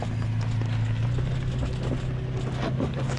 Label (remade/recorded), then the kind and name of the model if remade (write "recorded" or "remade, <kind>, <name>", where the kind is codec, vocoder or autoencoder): recorded